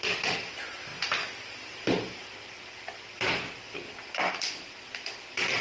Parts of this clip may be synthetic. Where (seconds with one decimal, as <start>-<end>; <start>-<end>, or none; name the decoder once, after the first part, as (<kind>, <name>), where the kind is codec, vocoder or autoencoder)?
none